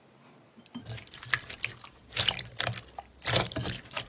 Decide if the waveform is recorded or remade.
recorded